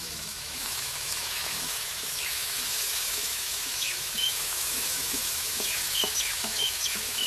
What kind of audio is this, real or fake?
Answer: fake